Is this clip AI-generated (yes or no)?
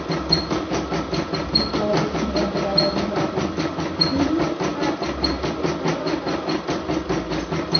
no